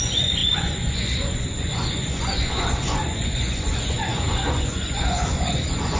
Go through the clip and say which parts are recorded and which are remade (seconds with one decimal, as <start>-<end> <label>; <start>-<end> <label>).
0.0-6.0 remade